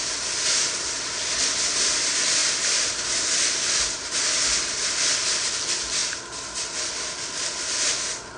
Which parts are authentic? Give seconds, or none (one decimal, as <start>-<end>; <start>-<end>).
0.0-8.4